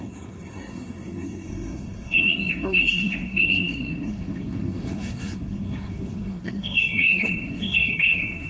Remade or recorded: remade